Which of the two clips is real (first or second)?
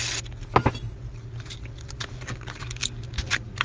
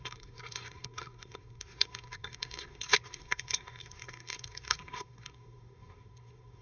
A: first